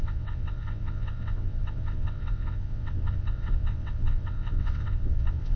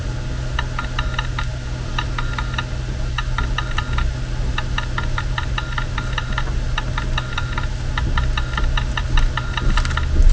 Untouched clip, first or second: second